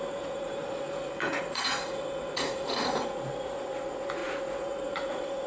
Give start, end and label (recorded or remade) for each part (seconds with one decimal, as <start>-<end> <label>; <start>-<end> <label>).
0.0-5.5 remade